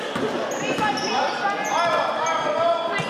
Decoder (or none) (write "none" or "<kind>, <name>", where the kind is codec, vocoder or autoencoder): none